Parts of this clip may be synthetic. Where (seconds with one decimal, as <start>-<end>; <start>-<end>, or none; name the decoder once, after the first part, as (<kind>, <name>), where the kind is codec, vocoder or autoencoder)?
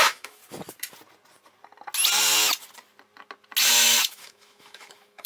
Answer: 0.0-0.4 (autoencoder, DAC-VAE); 3.6-5.3